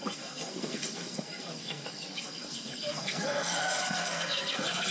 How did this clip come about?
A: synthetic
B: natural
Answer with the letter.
A